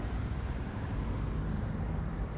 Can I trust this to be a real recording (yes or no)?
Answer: no